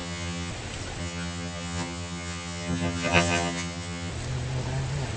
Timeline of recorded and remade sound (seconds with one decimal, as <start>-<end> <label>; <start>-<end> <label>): 0.0-0.5 remade; 0.5-1.0 recorded; 1.0-4.1 remade; 4.1-5.2 recorded